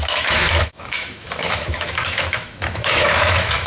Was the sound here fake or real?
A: fake